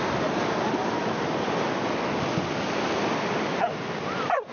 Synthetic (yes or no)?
no